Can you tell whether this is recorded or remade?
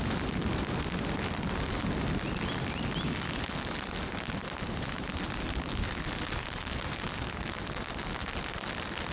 recorded